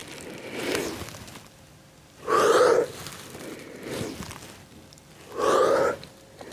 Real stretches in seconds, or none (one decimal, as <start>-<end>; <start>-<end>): 0.0-6.5